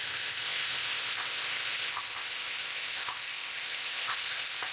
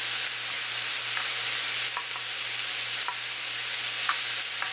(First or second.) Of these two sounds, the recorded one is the second